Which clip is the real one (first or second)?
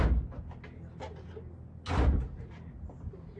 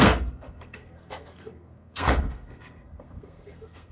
first